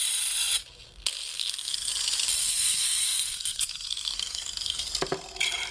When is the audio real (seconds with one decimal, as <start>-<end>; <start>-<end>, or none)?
0.0-1.3; 1.9-2.4; 4.8-5.7